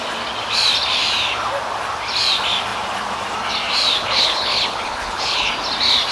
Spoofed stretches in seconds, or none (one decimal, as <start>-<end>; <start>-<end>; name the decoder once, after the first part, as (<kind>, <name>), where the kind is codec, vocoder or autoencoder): 4.0-5.5 (codec, HILCodec)